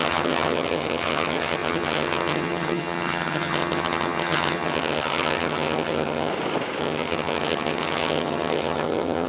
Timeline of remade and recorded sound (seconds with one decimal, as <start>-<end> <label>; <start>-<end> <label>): 0.0-6.3 remade; 6.3-6.8 recorded; 6.8-9.3 remade

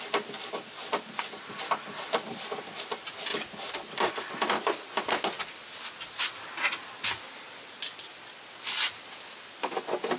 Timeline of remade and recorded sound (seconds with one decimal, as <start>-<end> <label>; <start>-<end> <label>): 0.0-10.2 recorded

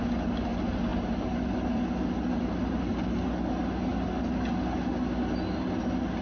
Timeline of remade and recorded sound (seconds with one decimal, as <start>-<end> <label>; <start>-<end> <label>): 0.0-6.2 recorded

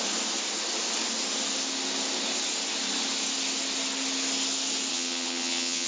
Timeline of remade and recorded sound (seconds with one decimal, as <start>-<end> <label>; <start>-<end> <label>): 0.0-4.9 recorded; 4.9-5.9 remade

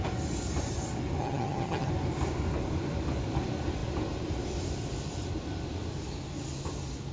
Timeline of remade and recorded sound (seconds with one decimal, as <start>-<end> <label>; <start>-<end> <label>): 0.0-1.2 recorded; 1.2-1.9 remade; 1.9-7.1 recorded

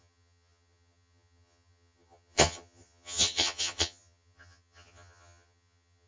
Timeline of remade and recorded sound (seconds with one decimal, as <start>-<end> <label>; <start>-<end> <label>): 0.0-6.1 remade

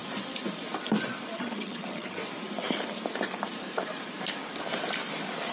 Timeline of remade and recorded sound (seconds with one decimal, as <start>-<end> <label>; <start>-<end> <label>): 0.0-1.3 recorded; 1.3-2.2 remade; 2.2-5.5 recorded

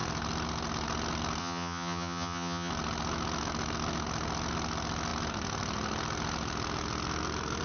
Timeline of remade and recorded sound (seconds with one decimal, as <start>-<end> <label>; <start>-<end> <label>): 0.0-1.4 recorded; 1.4-2.7 remade; 2.7-7.6 recorded